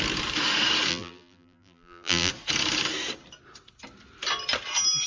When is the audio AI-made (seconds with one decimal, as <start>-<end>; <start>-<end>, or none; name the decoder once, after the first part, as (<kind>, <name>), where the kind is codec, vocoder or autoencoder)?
0.9-2.3 (vocoder, BigVGAN v2)